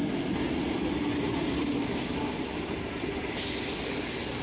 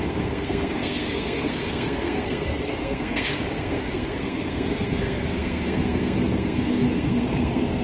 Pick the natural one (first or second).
first